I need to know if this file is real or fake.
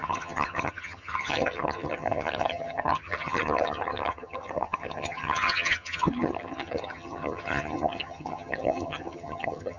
fake